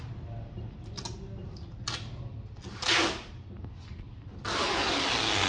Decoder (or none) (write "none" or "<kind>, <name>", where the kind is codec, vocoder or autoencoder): none